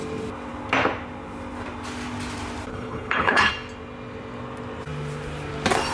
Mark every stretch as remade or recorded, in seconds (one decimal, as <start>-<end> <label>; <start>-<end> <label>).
0.0-2.7 recorded; 2.7-3.5 remade; 3.5-5.9 recorded